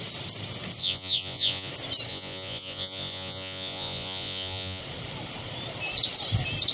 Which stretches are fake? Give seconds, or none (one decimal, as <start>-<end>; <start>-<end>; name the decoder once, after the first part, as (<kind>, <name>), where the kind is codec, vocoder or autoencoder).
0.8-1.7 (vocoder, Vocos); 2.1-4.8